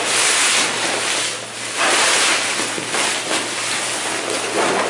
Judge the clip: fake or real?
real